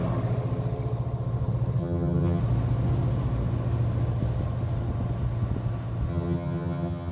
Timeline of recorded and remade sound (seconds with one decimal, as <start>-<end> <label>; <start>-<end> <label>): 0.0-1.8 recorded; 1.8-2.4 remade; 2.4-6.1 recorded; 6.1-7.1 remade